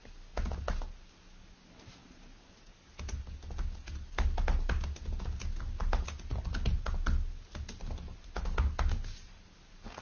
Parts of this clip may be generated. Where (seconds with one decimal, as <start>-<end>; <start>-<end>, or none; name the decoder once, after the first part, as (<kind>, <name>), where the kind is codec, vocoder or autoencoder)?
none

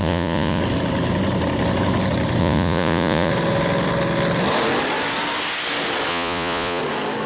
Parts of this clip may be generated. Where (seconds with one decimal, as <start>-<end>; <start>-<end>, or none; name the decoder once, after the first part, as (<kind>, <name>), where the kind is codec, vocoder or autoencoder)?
0.0-0.6 (vocoder, Vocos); 2.4-3.3; 6.1-6.8

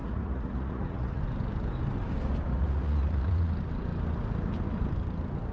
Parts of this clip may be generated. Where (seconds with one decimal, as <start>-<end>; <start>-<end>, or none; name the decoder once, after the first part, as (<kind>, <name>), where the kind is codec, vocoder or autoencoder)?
0.0-1.2 (vocoder, Vocos); 2.5-3.5